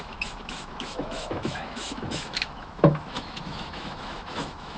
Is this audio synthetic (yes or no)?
yes